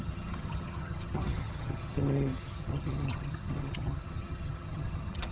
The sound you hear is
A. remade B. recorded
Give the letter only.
A